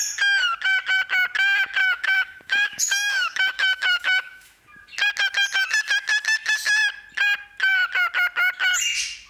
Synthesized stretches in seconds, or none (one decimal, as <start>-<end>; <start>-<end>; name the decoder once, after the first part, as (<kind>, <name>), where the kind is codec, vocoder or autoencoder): 1.8-4.6 (autoencoder, DAC-VAE)